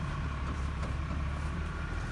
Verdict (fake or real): fake